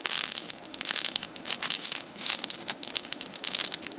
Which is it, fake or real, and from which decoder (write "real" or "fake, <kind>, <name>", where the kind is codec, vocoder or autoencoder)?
fake, autoencoder, DAC-VAE